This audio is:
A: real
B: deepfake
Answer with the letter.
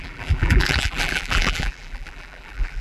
B